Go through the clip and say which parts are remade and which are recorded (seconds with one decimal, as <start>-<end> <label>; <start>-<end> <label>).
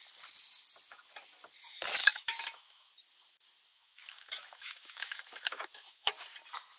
0.0-2.0 recorded; 2.0-2.9 remade; 2.9-3.7 recorded; 3.7-6.1 remade; 6.1-6.8 recorded